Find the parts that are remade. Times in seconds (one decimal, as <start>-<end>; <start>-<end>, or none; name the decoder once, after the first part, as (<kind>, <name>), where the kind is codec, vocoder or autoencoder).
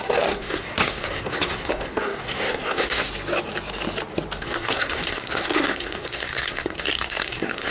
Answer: 0.0-3.1 (codec, SNAC); 4.4-7.7